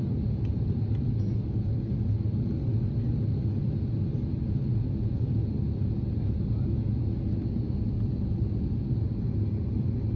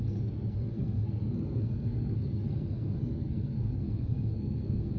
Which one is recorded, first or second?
first